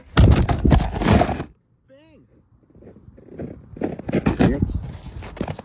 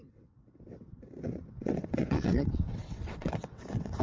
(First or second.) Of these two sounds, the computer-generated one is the second